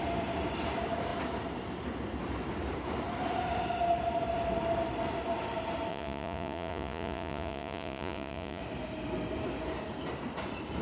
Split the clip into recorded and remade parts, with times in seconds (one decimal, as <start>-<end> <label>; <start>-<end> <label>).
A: 0.0-5.9 recorded; 5.9-8.6 remade; 8.6-10.8 recorded